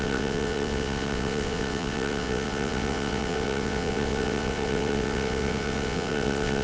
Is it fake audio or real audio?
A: fake